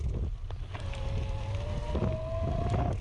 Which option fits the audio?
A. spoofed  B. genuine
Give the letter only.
B